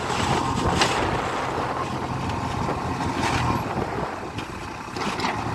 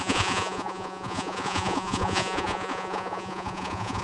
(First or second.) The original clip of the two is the first